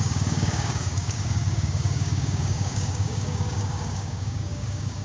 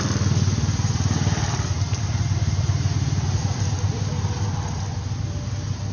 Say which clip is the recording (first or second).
second